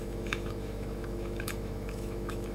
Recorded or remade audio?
remade